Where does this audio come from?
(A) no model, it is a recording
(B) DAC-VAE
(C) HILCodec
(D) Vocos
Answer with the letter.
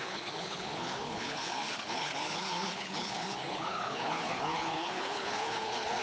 C